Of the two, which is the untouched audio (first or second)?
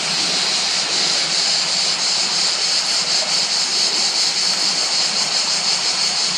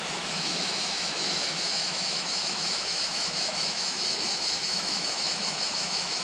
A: first